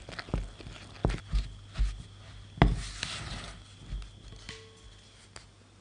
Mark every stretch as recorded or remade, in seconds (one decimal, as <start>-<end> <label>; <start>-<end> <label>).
0.0-5.8 recorded

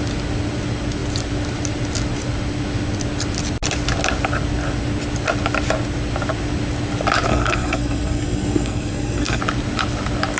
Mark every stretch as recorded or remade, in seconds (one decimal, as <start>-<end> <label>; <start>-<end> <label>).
0.0-7.3 recorded; 7.3-9.4 remade; 9.4-10.4 recorded